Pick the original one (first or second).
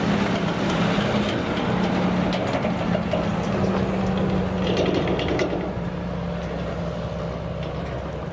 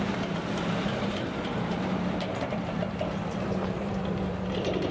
first